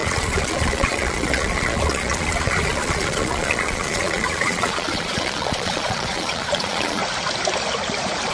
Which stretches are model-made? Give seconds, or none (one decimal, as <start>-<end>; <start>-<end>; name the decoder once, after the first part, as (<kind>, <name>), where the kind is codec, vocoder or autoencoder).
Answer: 0.0-7.0 (vocoder, Vocos)